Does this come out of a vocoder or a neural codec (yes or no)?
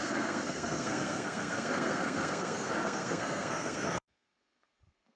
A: yes